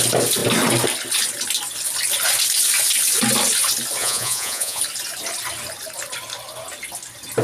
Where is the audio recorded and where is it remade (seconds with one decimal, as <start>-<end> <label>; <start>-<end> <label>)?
0.0-4.0 recorded; 4.0-4.8 remade; 4.8-7.4 recorded